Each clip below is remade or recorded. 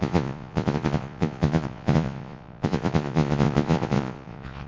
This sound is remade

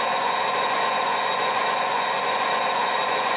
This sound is remade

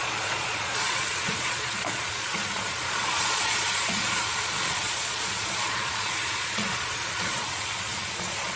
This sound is remade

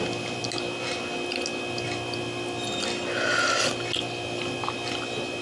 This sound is recorded